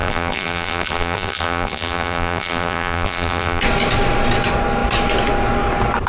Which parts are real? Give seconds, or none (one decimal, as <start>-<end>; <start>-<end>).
3.6-6.1